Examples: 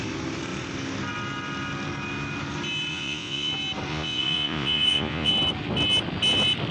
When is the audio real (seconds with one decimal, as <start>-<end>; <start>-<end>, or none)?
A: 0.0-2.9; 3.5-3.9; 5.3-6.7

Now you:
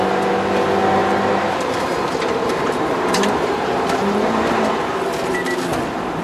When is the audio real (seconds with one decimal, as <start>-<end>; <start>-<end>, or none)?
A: 0.0-1.0; 4.7-6.2

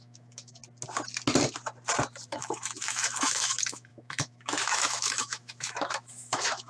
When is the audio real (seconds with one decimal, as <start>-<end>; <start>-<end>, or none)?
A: 0.6-2.3

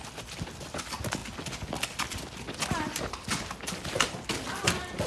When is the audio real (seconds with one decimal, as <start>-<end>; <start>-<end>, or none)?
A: 0.0-5.1

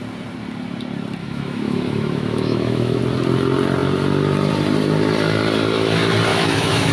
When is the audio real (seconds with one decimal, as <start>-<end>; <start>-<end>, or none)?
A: 0.0-1.2; 3.0-6.3